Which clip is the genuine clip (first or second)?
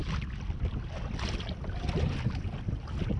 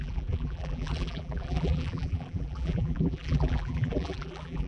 first